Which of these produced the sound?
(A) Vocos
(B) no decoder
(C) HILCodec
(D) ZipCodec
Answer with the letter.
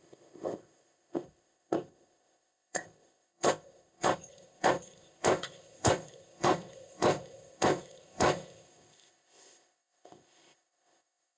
D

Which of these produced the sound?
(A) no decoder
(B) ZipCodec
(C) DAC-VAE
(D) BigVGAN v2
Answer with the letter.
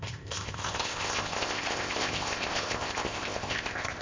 B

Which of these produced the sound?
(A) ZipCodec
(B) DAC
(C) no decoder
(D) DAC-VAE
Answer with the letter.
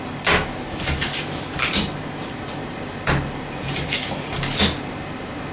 C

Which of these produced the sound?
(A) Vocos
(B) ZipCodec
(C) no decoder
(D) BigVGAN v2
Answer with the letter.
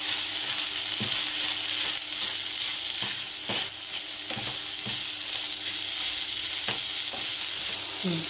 C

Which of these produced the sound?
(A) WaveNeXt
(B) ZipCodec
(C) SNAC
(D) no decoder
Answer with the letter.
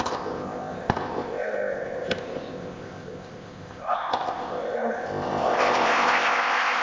B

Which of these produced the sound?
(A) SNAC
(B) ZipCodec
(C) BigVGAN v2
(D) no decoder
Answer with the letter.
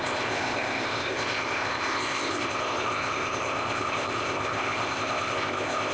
B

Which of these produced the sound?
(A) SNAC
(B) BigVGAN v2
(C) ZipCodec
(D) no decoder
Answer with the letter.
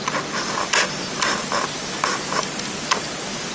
D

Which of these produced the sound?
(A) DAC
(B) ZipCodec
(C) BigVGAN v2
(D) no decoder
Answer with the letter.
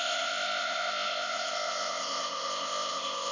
B